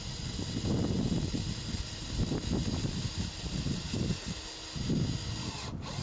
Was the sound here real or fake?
real